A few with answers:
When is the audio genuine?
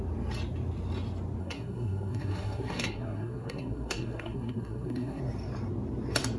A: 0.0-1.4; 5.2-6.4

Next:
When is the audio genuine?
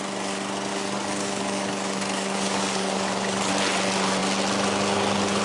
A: 0.0-0.7; 3.5-5.4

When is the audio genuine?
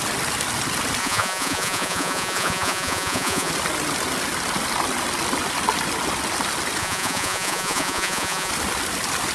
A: 0.0-1.0; 3.5-6.8; 8.5-9.3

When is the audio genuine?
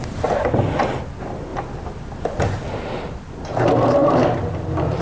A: 0.0-5.0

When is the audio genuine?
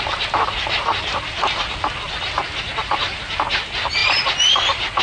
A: 0.0-5.0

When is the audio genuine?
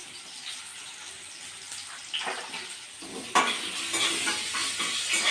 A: 0.0-5.3